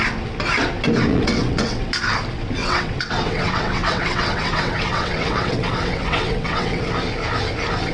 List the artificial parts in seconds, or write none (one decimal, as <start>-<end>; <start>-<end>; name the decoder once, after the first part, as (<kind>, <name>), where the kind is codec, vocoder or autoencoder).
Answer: 1.1-1.9 (vocoder, WaveNeXt); 2.6-6.9